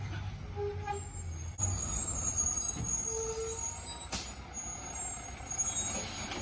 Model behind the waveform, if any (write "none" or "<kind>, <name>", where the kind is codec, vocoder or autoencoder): none